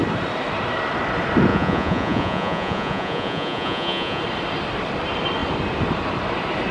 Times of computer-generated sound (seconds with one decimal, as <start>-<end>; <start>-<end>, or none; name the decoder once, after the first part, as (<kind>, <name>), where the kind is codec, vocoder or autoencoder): 1.5-4.2 (vocoder, Vocos)